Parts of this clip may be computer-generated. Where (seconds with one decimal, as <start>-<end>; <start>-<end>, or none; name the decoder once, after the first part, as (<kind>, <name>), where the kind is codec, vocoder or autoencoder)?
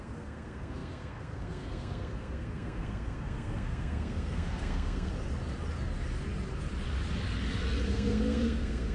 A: 0.0-5.1 (codec, SNAC); 7.9-8.9